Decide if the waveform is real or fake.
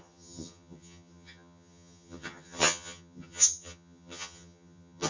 fake